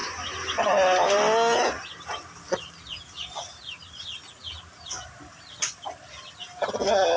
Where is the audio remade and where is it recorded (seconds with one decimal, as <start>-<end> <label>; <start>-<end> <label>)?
0.0-7.2 recorded